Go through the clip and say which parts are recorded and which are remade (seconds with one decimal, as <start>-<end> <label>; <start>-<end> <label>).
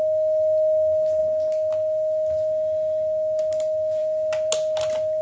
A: 0.0-5.2 recorded